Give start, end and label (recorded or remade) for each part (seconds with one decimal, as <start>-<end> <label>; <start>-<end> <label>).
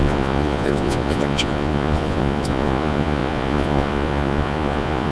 0.0-5.1 remade